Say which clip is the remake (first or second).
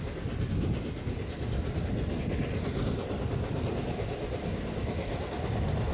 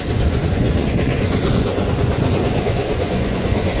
second